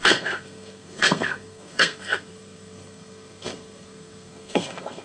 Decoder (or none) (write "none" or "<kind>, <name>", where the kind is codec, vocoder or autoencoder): codec, SNAC